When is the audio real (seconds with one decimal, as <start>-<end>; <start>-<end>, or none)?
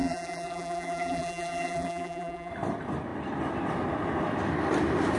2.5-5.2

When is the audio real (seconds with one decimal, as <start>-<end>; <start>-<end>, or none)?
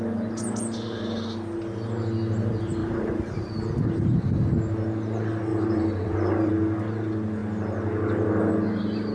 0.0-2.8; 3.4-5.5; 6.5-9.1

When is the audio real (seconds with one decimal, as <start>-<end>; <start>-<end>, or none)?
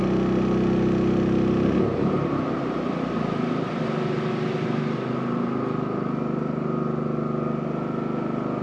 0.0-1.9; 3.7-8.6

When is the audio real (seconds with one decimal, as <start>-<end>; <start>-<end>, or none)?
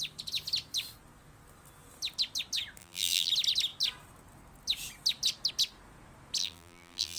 0.0-2.8; 3.3-6.4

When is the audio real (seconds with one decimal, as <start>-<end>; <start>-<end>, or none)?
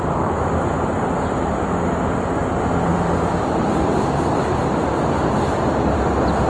0.0-6.5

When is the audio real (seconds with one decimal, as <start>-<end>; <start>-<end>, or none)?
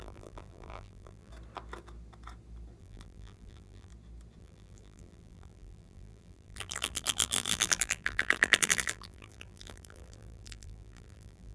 1.3-2.8; 3.9-4.4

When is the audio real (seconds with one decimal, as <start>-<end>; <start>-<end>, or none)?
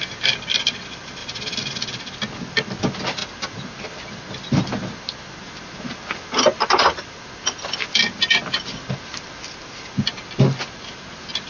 0.0-1.2; 1.8-11.5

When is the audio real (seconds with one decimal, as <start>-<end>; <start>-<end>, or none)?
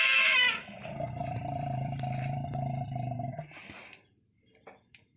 0.0-1.2; 4.2-5.2